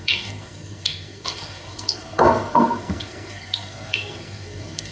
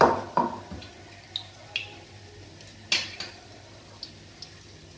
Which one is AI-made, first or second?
first